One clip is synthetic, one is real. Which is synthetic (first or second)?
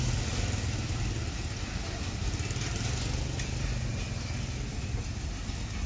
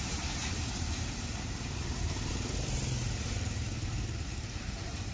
second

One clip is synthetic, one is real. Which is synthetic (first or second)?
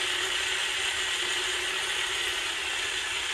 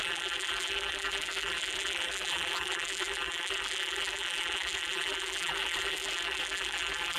second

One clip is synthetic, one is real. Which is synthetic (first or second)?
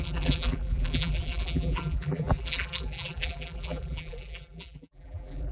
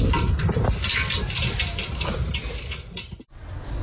first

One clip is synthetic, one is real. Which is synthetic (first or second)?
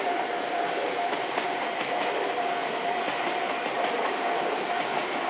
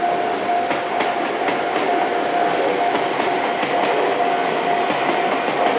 first